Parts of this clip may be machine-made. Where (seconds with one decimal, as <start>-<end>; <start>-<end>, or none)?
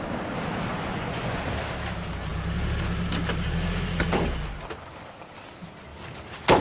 0.7-1.4